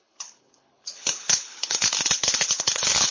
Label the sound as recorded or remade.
remade